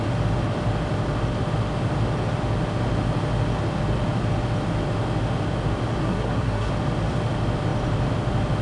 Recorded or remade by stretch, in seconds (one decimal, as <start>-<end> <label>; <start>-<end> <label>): 0.0-6.0 recorded; 6.0-6.7 remade; 6.7-8.6 recorded